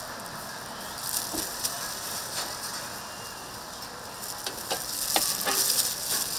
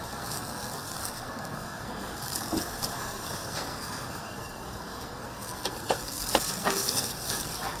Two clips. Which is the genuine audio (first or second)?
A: first